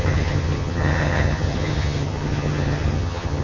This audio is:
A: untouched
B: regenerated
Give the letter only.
B